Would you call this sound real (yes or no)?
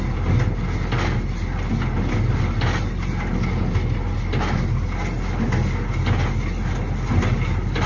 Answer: yes